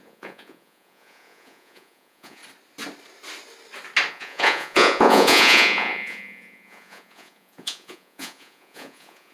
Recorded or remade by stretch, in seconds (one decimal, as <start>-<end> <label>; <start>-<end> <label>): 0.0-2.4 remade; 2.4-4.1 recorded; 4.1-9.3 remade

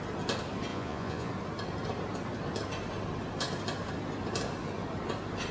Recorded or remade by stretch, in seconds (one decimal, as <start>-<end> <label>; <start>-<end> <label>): 0.0-0.7 recorded; 0.7-1.3 remade; 1.3-5.5 recorded

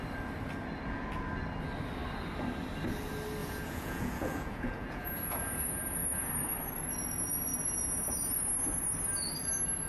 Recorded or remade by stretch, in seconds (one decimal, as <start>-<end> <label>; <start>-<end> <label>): 0.0-3.4 recorded; 3.4-6.3 remade; 6.3-9.9 recorded